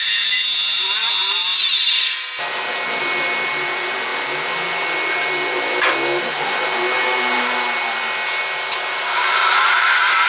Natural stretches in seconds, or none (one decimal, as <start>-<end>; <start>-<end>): 0.0-10.3